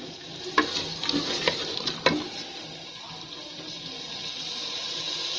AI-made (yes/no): no